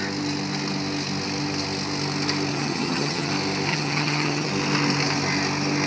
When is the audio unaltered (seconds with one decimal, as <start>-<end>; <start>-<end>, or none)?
0.0-2.5; 3.3-3.7; 4.5-5.9

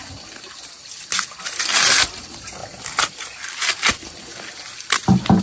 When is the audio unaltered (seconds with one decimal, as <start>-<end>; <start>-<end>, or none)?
0.0-5.4

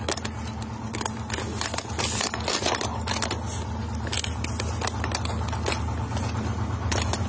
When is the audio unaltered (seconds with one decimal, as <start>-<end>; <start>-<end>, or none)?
0.0-7.3

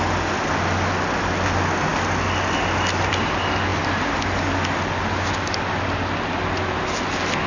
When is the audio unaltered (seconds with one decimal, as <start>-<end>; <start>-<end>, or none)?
0.0-7.5

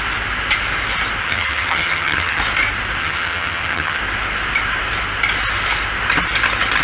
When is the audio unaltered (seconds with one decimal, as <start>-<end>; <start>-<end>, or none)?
0.0-1.2; 2.4-3.0; 4.0-6.8

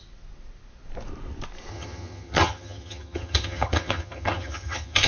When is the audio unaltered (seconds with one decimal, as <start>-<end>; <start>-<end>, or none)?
0.0-1.7